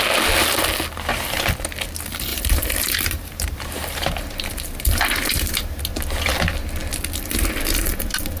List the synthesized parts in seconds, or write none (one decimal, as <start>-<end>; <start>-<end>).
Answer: 2.3-5.8